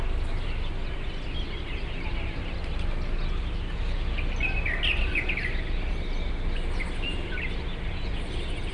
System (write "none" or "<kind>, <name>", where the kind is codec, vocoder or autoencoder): none